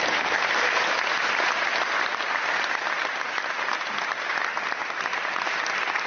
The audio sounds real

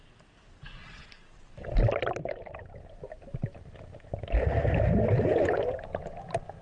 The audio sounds real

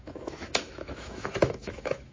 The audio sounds fake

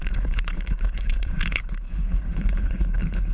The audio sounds fake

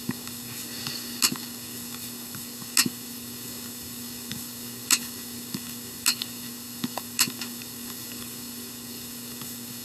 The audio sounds fake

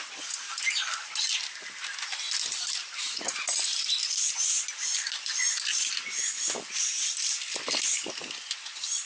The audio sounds real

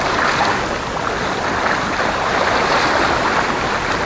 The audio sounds real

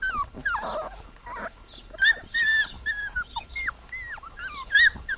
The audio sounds real